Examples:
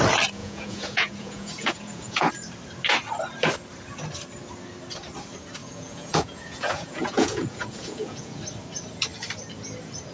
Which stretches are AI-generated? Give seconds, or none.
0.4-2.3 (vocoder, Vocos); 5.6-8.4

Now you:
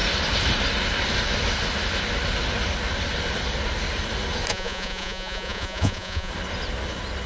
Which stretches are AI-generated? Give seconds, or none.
4.5-6.3 (vocoder, Vocos)

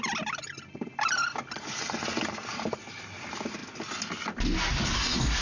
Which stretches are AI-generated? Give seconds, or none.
none